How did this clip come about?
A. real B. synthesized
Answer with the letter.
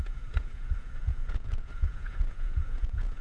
B